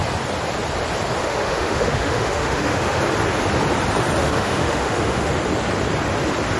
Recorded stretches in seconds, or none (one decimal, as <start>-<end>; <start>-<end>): 0.0-1.2; 3.0-4.2; 5.3-6.6